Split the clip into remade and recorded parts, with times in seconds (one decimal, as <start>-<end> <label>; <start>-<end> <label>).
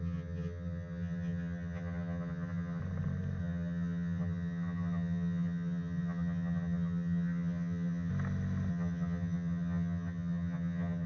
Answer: 0.0-2.8 remade; 2.8-3.4 recorded; 3.4-8.1 remade; 8.1-8.7 recorded; 8.7-11.1 remade